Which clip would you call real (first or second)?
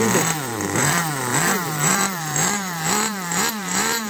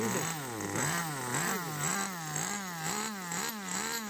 second